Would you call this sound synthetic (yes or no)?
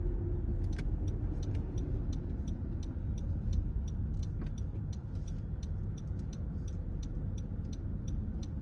no